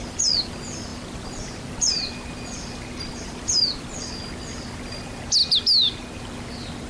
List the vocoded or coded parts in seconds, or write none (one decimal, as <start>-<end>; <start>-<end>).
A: 0.9-4.1